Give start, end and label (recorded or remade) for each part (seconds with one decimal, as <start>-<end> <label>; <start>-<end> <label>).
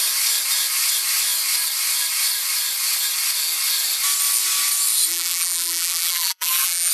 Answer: 0.0-5.1 recorded; 5.1-6.9 remade